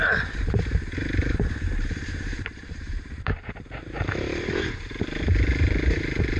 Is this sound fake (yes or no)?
yes